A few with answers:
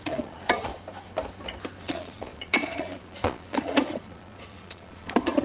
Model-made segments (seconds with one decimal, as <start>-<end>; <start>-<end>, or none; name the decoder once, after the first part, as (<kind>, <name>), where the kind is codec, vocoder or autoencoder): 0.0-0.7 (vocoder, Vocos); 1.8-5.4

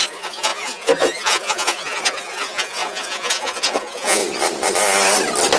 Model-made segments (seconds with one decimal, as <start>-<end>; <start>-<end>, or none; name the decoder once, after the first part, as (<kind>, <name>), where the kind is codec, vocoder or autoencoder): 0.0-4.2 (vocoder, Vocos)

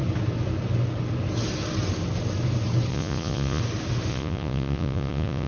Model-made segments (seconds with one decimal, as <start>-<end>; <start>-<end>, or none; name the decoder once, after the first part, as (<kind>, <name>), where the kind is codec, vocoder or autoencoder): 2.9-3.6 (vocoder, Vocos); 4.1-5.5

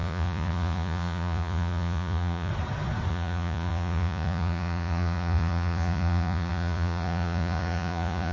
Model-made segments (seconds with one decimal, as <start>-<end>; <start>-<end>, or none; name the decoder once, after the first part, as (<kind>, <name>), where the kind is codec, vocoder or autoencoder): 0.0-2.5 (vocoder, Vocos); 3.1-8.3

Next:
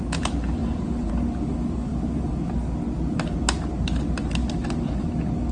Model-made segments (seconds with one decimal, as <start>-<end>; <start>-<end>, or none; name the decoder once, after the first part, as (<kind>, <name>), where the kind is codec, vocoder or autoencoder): 0.6-1.1 (vocoder, Vocos)

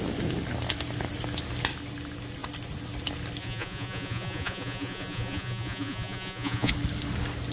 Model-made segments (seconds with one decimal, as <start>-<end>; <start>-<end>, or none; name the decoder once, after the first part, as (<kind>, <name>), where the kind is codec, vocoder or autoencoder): 3.4-6.7 (vocoder, Vocos)